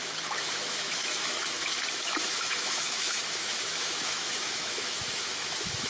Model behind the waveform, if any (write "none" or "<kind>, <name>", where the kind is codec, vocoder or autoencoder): autoencoder, DAC-VAE